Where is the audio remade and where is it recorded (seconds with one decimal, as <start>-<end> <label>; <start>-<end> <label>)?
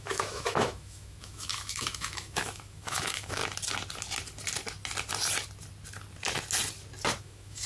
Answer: 0.0-3.4 remade; 3.4-7.2 recorded; 7.2-7.7 remade